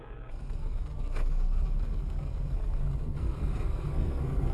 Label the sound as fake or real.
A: fake